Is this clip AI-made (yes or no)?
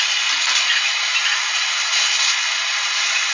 no